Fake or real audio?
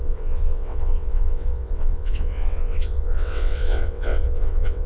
fake